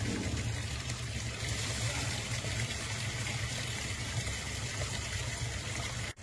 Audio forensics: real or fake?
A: real